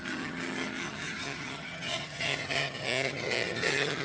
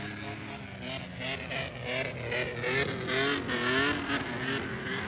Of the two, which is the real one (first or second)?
second